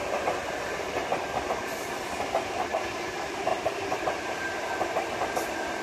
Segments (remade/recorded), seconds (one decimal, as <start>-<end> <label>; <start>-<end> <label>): 0.0-5.8 recorded